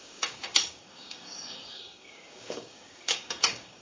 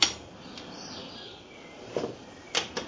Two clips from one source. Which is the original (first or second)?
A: second